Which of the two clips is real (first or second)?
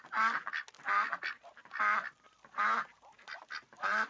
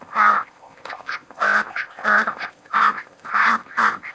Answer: first